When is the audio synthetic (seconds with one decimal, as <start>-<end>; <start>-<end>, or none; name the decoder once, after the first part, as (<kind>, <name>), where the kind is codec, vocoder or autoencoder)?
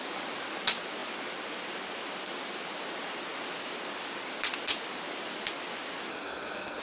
6.1-6.8 (codec, SNAC)